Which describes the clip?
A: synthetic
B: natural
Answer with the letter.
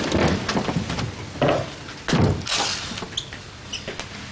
B